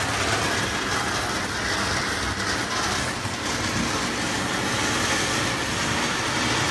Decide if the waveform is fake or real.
real